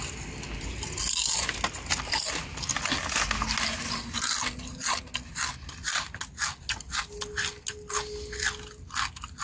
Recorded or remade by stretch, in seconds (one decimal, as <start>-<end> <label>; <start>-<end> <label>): 0.0-9.4 recorded